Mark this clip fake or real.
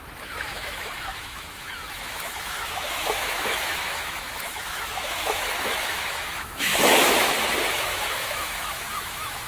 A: fake